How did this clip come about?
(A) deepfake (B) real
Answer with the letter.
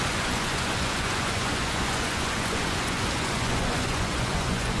A